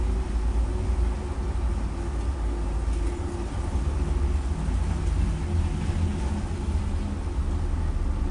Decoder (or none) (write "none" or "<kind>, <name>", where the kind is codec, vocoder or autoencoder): none